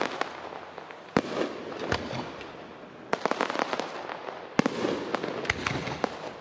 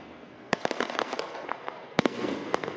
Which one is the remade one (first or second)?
second